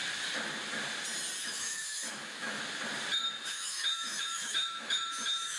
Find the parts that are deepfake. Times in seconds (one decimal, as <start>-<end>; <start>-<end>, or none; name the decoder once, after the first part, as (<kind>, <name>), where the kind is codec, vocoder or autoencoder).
1.4-2.6 (autoencoder, DAC-VAE); 3.5-5.6